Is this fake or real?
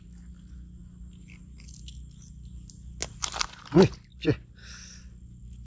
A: real